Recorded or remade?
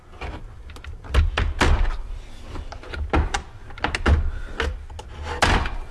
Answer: recorded